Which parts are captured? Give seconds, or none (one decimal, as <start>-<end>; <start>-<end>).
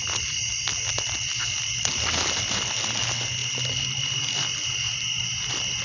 0.0-5.8